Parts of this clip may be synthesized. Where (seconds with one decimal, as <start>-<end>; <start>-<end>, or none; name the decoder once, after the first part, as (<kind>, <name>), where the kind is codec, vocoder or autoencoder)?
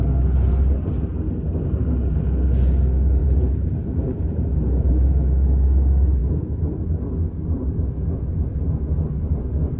3.2-4.9 (vocoder, BigVGAN v2); 6.2-6.8